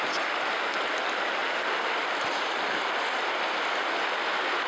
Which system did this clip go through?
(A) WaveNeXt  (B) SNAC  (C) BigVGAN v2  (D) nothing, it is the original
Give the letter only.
D